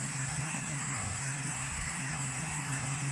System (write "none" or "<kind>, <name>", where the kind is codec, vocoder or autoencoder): codec, SNAC